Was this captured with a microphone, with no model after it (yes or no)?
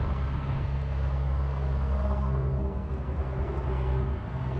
no